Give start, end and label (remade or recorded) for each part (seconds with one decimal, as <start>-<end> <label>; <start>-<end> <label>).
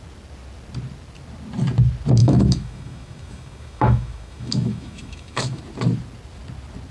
0.0-2.2 recorded; 2.2-5.6 remade; 5.6-6.9 recorded